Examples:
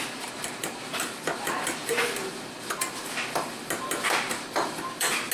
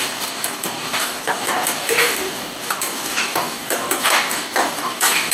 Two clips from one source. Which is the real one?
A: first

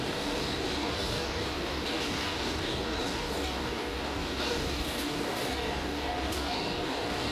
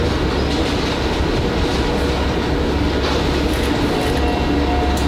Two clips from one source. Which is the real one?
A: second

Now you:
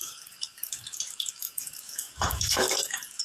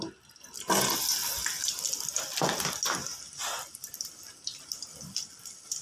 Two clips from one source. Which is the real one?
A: second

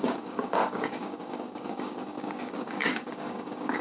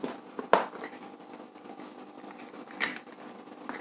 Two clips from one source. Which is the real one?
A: second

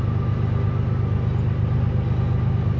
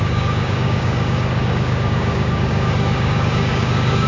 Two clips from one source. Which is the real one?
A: first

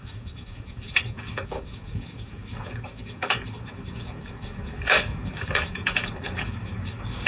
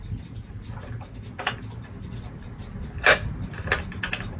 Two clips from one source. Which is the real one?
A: second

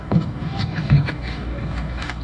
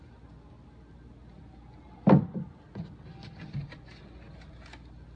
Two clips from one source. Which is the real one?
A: second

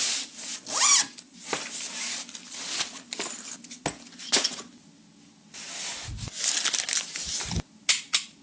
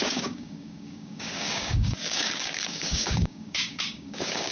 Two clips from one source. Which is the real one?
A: first